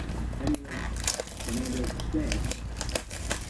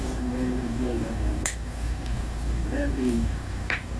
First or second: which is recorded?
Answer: first